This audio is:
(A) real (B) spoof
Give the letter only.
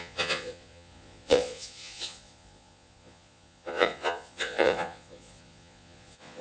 B